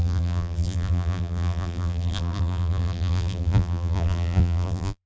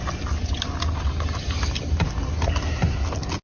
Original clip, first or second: second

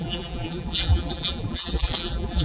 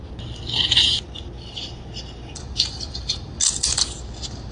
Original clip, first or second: second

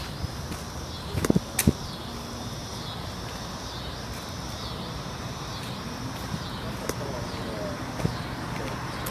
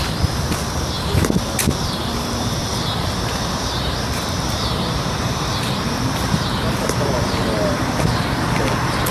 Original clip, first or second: first